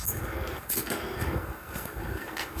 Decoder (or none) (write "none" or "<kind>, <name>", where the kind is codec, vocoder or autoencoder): codec, SNAC